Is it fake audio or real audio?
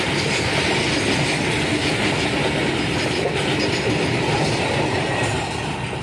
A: real